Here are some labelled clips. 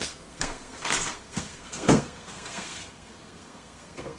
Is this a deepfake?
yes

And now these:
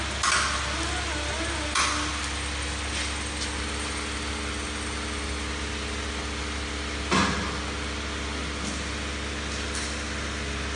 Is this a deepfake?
no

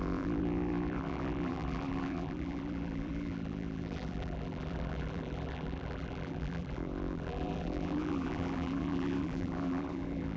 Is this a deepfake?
yes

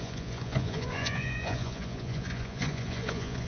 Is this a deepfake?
yes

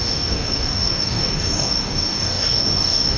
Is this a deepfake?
yes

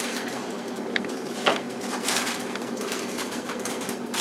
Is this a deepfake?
yes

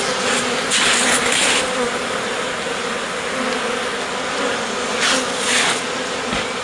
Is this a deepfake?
no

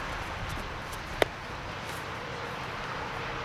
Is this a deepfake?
yes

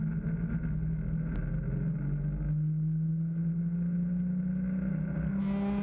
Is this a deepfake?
no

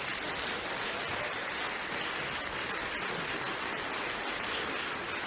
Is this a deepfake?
no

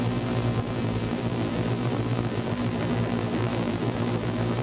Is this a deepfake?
yes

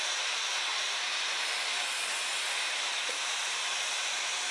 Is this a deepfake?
no